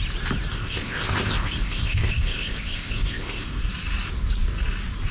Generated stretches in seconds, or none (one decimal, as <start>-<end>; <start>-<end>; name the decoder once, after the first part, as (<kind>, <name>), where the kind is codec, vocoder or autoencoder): 0.5-3.6 (codec, ZipCodec)